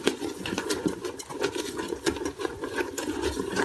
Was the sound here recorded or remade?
remade